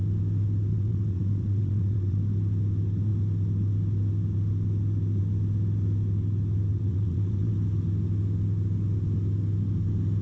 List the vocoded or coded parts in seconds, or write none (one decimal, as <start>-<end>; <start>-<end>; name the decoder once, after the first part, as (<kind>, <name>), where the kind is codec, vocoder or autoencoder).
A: 0.7-2.2 (vocoder, WaveNeXt); 6.7-7.5